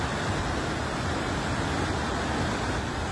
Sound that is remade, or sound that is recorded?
recorded